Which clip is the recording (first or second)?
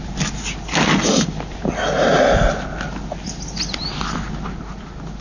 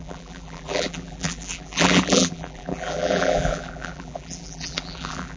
first